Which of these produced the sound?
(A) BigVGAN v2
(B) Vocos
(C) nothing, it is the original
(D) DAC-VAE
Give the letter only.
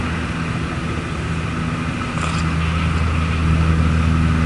C